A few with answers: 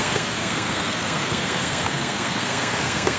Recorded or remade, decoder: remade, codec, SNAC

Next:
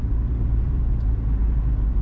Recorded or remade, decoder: recorded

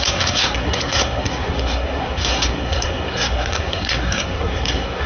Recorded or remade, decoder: remade, codec, SNAC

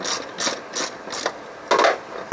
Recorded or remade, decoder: recorded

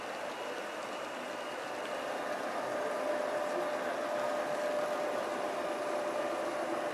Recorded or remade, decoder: recorded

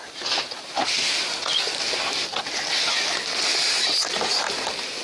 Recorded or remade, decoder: recorded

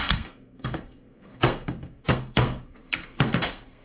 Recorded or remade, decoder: remade, codec, SNAC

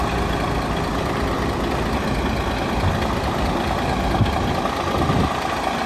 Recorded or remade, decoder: recorded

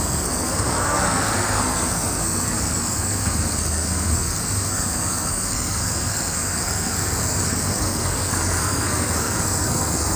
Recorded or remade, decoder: remade, codec, SNAC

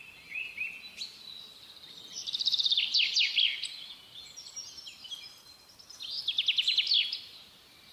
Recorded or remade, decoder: recorded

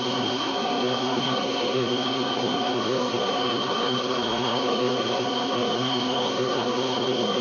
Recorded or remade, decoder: remade, codec, SNAC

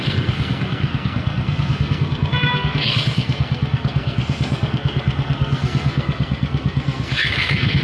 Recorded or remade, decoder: remade, codec, SNAC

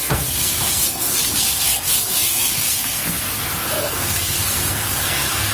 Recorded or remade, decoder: remade, codec, SNAC